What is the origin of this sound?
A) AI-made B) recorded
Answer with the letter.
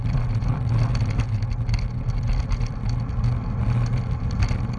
B